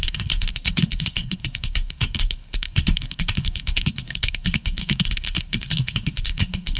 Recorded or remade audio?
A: remade